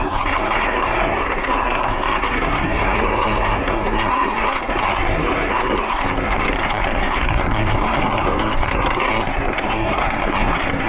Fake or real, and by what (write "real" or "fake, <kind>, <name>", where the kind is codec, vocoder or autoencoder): fake, codec, SNAC